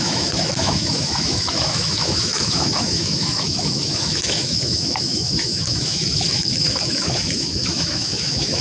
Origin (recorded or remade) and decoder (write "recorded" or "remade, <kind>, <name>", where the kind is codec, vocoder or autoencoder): remade, autoencoder, DAC-VAE